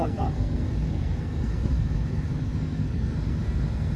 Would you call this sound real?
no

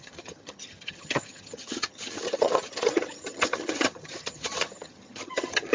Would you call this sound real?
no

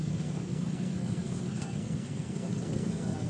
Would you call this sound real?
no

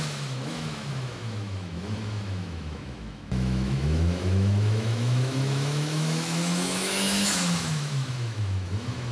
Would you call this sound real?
no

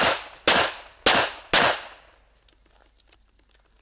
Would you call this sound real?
yes